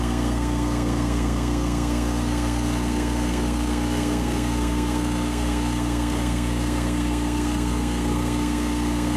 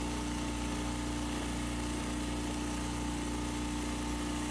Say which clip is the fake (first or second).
first